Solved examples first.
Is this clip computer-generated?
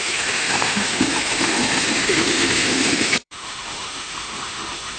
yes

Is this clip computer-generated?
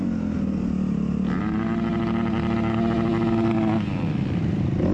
no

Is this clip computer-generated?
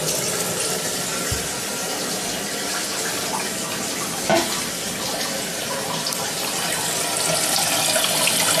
no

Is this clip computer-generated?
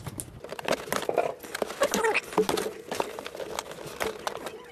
no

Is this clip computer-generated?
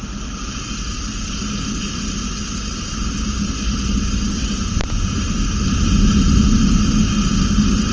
no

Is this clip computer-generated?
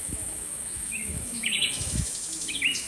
yes